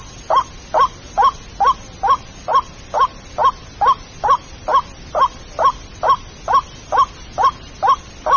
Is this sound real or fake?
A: real